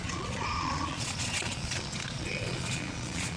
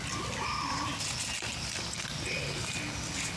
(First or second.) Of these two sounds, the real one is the second